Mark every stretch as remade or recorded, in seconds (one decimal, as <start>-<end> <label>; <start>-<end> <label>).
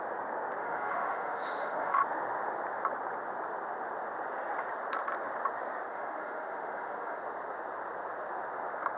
0.0-0.6 recorded; 0.6-2.0 remade; 2.0-5.9 recorded; 5.9-7.2 remade; 7.2-9.0 recorded